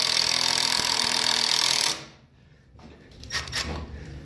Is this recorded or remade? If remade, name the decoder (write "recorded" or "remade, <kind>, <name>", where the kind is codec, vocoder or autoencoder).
remade, vocoder, BigVGAN v2